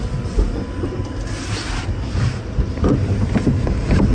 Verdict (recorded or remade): recorded